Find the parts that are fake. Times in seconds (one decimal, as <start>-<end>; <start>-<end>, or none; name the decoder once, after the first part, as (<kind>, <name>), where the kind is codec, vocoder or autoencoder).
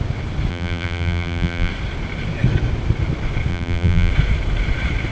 0.5-1.7 (vocoder, BigVGAN v2); 3.5-4.1